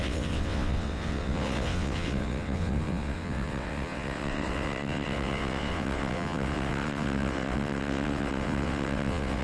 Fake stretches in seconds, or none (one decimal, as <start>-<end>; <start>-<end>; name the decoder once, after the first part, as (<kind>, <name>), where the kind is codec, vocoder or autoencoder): 0.0-9.4 (vocoder, WaveNeXt)